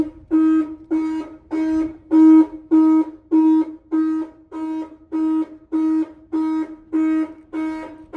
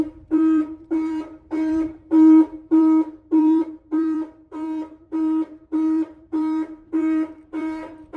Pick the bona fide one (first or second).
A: first